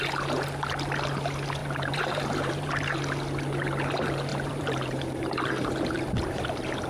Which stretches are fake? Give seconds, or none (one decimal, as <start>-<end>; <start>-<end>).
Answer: 1.6-2.9; 4.3-6.0